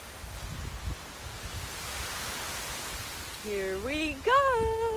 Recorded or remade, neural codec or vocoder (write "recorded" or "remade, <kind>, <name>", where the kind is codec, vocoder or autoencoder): recorded